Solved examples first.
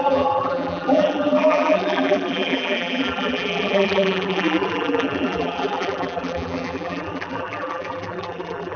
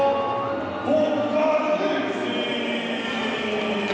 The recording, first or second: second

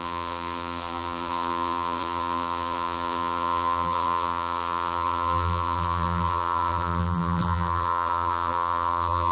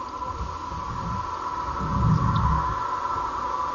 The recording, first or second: second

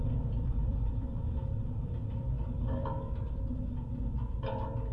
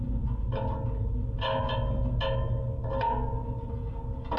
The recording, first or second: second